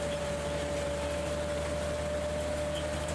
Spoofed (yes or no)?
no